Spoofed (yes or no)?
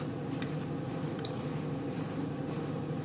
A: yes